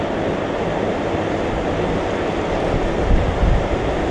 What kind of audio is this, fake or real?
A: real